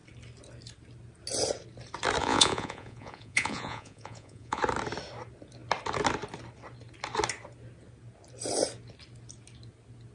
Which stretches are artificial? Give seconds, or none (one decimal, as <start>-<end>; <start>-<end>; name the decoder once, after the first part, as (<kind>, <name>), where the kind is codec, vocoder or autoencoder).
2.2-4.6 (vocoder, Vocos)